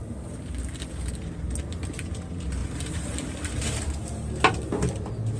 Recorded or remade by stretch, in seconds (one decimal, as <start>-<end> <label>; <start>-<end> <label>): 0.0-2.6 recorded; 2.6-4.7 remade; 4.7-5.4 recorded